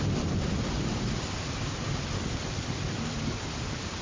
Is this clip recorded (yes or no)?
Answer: yes